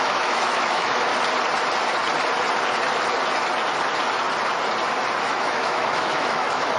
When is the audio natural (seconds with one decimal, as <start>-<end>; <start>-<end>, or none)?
1.1-5.2